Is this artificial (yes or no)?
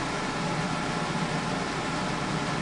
no